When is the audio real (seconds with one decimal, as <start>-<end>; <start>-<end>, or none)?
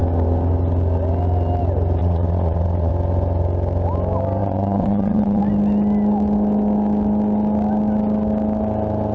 0.0-2.0; 2.9-4.4; 5.4-9.1